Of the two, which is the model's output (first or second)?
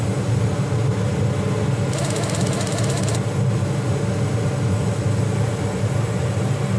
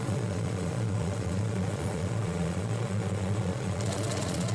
second